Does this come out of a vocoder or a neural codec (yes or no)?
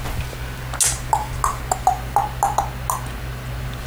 no